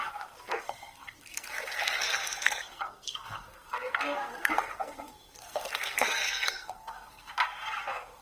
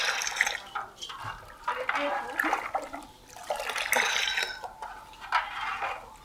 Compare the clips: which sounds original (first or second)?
second